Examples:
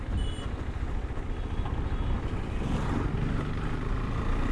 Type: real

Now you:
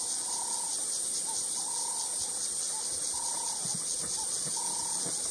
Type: real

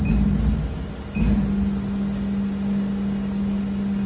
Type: real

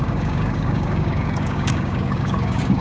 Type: fake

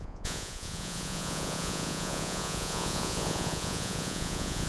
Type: fake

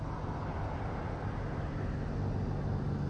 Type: real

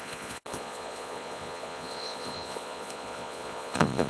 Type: fake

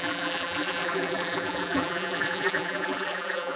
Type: fake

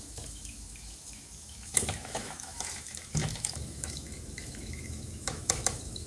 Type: fake